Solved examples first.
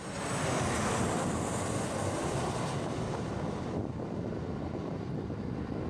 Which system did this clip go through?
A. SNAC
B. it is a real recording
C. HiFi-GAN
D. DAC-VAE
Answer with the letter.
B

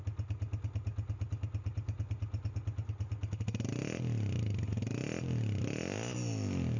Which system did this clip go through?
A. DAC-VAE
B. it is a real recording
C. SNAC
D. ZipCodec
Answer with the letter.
B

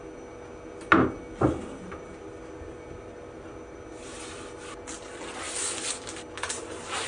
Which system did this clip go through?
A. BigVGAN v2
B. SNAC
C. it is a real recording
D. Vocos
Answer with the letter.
C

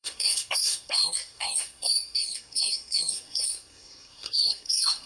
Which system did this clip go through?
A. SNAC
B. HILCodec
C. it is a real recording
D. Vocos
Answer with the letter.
A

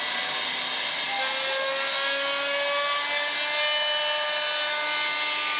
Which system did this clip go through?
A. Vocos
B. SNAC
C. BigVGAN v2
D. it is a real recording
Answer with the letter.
D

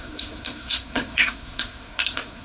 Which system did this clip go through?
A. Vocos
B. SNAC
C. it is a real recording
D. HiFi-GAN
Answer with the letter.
B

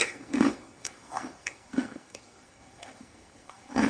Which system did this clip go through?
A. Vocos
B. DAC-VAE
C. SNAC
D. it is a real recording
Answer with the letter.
C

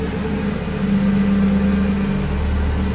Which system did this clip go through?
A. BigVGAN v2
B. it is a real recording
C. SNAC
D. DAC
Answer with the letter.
B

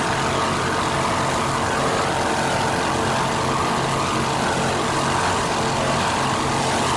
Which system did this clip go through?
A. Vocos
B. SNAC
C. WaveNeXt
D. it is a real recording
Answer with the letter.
D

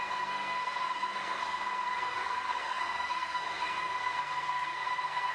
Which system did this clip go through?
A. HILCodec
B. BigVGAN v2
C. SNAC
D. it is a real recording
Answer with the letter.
C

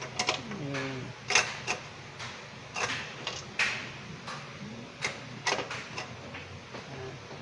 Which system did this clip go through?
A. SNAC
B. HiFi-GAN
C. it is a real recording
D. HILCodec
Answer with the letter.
C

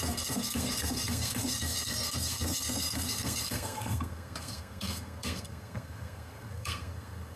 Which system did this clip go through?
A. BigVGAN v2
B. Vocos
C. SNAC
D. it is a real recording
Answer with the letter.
C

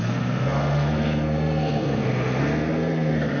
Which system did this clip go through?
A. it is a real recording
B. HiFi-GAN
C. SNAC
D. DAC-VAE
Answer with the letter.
C